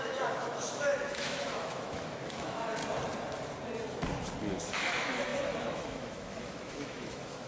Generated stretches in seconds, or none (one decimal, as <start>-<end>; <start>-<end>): 0.0-2.8; 4.5-7.5